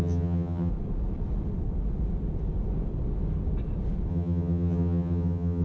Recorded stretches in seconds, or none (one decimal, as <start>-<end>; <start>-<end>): 0.7-4.1